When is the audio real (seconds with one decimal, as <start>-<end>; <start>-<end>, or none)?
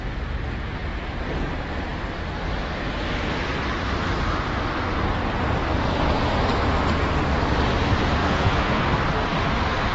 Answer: 0.0-8.2; 8.8-9.9